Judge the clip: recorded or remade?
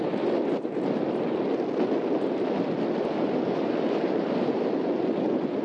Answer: recorded